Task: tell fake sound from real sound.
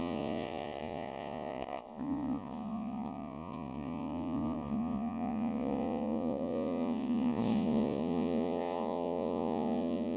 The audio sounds fake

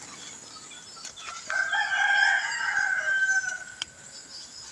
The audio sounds real